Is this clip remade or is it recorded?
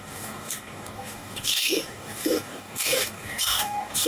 remade